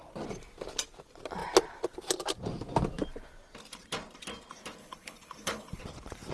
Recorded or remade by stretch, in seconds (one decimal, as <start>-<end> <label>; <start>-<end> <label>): 0.0-4.8 recorded; 4.8-5.8 remade; 5.8-6.3 recorded